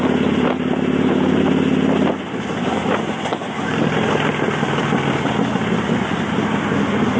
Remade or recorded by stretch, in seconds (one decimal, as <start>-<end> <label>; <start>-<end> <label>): 0.0-7.2 recorded